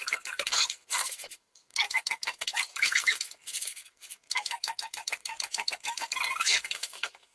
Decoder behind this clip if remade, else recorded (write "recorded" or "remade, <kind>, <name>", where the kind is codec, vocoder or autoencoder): remade, codec, SNAC